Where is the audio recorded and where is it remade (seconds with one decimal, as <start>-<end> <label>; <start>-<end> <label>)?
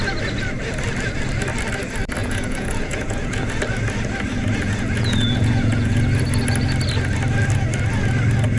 0.0-2.2 recorded; 2.2-3.5 remade; 3.5-4.3 recorded; 4.3-6.0 remade; 6.0-8.6 recorded